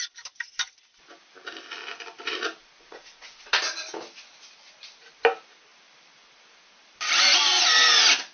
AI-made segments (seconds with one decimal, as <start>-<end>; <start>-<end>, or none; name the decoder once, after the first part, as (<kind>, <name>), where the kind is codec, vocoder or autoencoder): 2.6-3.6 (vocoder, Vocos)

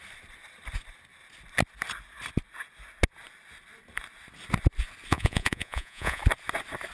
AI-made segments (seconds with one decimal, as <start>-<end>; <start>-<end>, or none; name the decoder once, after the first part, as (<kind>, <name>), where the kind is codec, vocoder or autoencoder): 5.1-6.2 (vocoder, Vocos)